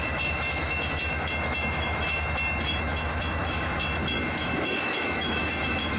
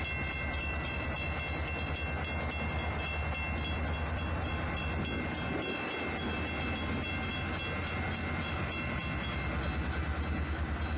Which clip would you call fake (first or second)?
first